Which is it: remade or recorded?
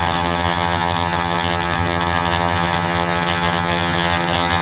remade